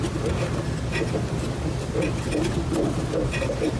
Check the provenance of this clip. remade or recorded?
recorded